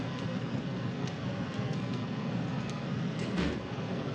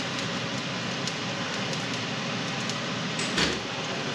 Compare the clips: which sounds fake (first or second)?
first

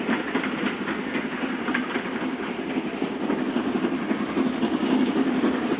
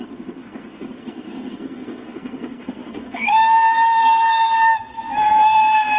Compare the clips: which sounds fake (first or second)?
second